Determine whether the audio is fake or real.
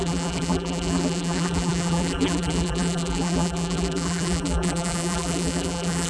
fake